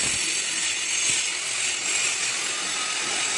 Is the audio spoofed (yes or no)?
no